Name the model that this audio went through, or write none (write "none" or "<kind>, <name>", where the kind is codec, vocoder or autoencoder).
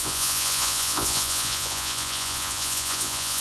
vocoder, Vocos